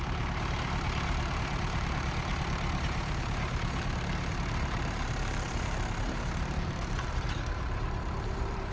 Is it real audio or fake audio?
fake